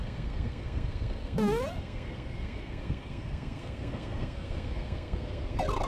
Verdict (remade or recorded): remade